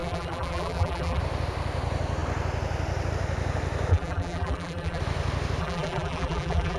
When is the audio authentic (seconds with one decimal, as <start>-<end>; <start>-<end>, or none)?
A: 1.2-3.9; 5.0-5.6